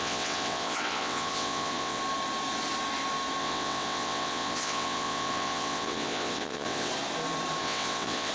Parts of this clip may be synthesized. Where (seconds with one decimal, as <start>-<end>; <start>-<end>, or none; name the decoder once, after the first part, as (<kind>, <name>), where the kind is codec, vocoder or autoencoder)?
0.0-2.0 (vocoder, WaveNeXt); 3.4-6.9; 7.6-8.3